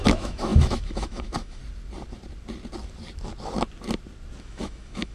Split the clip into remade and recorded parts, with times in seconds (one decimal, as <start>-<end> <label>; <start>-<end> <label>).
0.0-1.6 remade; 1.6-4.4 recorded; 4.4-5.1 remade